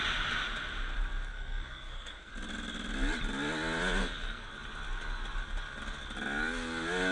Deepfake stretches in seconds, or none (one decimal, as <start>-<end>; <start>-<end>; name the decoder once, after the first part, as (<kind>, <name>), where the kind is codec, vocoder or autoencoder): 1.3-2.3 (codec, SNAC); 4.0-4.5